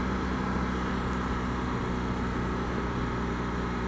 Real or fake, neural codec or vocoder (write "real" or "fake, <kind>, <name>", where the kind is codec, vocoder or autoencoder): real